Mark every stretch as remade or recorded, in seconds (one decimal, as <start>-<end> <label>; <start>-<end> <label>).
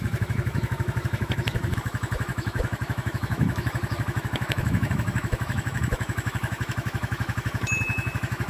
0.0-8.5 remade